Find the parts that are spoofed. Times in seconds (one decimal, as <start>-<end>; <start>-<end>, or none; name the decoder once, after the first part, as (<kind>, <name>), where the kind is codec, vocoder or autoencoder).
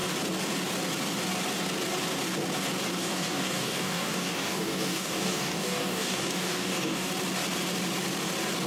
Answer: 3.0-7.1 (codec, DAC)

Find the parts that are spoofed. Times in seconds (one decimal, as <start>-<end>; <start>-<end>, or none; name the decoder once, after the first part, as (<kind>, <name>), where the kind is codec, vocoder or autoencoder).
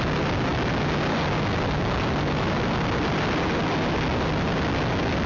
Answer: none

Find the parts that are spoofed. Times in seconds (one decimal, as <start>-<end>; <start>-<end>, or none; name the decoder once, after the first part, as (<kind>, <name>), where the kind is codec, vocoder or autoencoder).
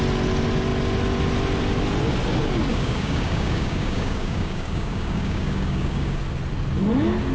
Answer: 2.7-6.2 (codec, DAC)